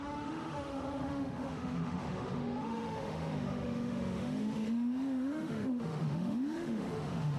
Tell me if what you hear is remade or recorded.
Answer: remade